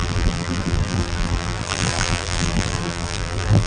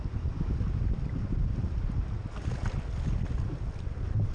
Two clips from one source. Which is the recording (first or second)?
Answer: second